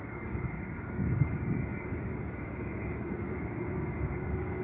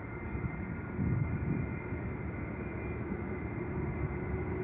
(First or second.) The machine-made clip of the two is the first